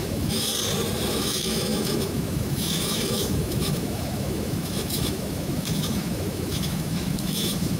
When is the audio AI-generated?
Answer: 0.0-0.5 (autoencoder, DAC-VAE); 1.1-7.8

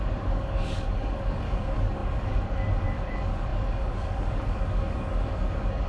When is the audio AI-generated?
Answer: 0.0-5.9 (codec, DAC)